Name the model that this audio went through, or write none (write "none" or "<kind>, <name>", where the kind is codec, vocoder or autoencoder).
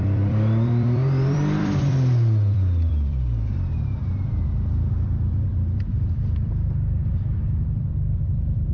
vocoder, BigVGAN v2